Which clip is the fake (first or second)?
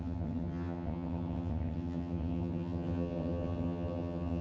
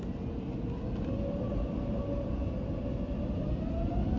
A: first